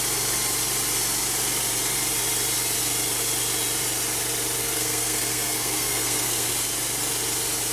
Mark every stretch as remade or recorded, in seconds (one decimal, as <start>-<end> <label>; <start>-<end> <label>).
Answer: 0.0-4.6 recorded; 4.6-6.5 remade; 6.5-7.7 recorded